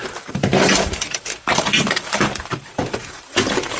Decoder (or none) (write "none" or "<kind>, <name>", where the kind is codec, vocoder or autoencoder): vocoder, BigVGAN v2